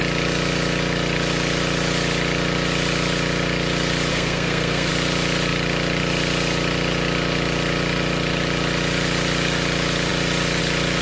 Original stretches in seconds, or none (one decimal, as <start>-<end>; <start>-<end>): 0.0-4.1; 4.9-11.0